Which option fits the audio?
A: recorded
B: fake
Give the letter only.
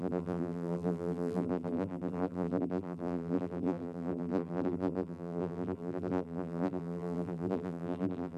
B